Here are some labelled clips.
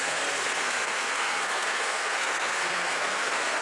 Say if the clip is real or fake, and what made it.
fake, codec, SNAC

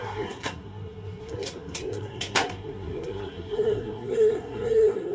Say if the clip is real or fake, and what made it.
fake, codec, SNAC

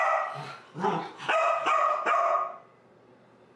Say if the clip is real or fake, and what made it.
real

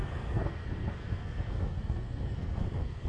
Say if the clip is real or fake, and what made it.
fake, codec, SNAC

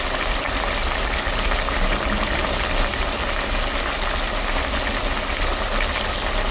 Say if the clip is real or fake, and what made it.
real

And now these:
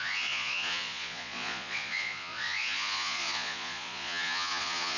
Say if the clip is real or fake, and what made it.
fake, vocoder, Vocos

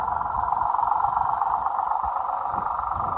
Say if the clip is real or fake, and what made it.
real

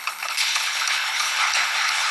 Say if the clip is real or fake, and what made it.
fake, codec, HILCodec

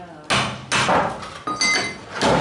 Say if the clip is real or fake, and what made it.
real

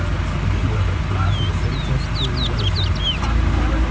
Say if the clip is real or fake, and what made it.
real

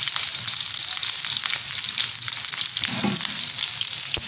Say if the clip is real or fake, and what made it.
real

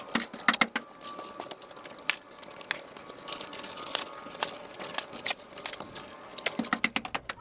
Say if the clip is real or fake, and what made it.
real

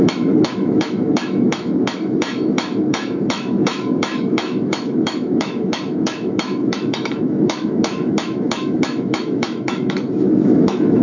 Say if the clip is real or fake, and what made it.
fake, autoencoder, DAC-VAE